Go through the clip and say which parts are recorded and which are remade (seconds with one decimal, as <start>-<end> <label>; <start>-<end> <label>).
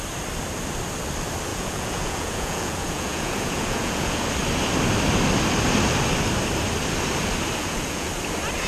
0.0-1.5 recorded; 1.5-4.2 remade; 4.2-7.6 recorded; 7.6-8.1 remade; 8.1-8.7 recorded